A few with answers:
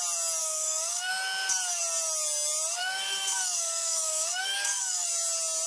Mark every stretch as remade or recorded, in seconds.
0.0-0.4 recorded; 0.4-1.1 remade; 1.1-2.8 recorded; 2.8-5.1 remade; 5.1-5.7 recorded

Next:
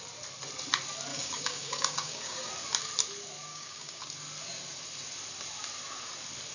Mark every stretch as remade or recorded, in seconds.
0.0-1.1 recorded; 1.1-2.5 remade; 2.5-3.5 recorded; 3.5-4.0 remade; 4.0-6.5 recorded